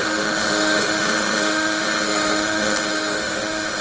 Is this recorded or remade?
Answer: remade